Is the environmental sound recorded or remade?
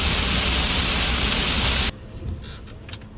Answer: recorded